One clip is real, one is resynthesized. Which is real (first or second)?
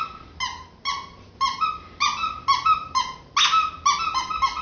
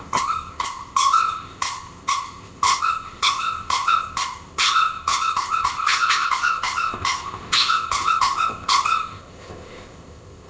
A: first